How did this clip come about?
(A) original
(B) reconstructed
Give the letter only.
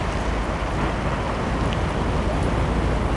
A